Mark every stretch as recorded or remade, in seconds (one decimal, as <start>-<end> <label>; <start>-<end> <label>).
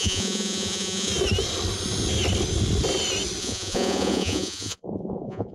0.0-1.1 remade; 1.1-3.4 recorded; 3.4-5.5 remade